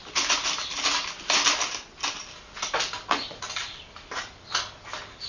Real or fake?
fake